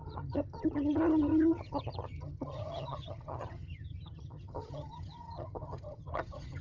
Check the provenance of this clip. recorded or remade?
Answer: remade